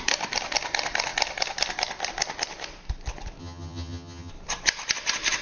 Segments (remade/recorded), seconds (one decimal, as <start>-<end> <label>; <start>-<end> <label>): 0.0-3.4 recorded; 3.4-4.3 remade; 4.3-5.4 recorded